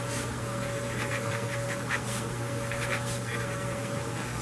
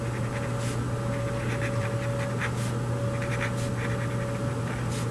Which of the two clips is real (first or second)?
second